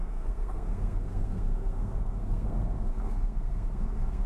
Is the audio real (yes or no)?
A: no